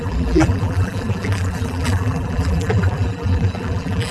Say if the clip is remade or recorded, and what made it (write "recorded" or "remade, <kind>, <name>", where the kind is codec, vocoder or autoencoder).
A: remade, vocoder, BigVGAN v2